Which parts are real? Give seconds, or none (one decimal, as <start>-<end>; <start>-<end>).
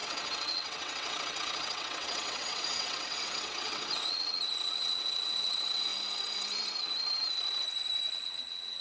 5.9-8.1